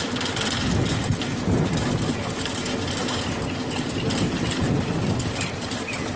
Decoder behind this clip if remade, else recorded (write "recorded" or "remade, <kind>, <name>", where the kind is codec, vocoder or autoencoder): recorded